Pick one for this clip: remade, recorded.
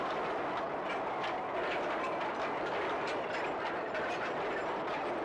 recorded